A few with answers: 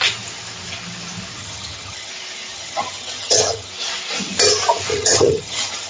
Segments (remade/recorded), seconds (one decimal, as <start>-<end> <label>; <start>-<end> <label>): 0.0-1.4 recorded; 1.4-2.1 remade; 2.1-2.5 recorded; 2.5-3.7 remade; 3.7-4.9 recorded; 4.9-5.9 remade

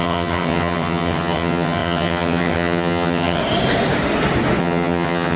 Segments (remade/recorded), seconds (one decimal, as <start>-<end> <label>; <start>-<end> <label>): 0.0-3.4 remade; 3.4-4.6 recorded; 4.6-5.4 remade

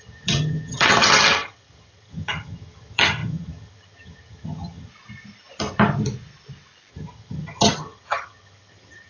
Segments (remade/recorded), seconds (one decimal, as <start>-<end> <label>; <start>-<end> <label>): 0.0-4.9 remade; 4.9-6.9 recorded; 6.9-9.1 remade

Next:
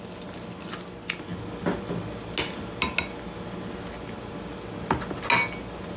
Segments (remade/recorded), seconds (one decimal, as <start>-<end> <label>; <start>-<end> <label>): 0.0-6.0 recorded

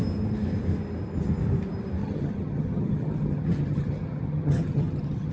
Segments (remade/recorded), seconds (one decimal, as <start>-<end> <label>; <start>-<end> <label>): 0.0-2.0 recorded; 2.0-5.3 remade

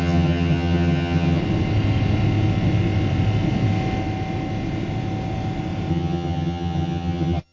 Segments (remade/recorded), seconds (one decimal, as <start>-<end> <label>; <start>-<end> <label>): 0.0-1.4 remade; 1.4-5.9 recorded; 5.9-7.5 remade